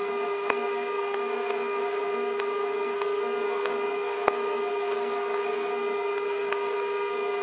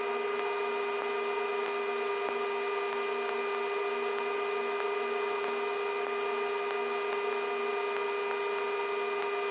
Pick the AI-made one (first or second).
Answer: first